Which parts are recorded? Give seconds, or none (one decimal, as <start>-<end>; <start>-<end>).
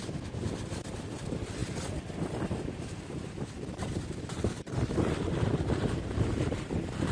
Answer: 0.0-7.1